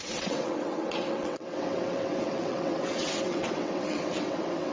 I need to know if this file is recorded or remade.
remade